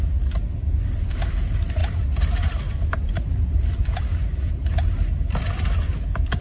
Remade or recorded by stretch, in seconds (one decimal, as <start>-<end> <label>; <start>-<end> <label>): 0.0-6.4 recorded